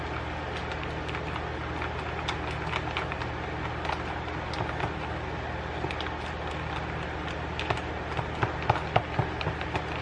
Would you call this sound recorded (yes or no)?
yes